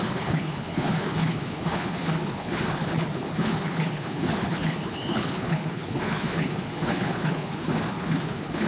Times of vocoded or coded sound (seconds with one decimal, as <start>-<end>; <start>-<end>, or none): 0.0-8.7